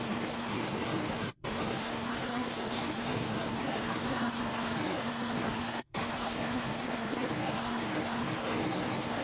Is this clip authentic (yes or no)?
no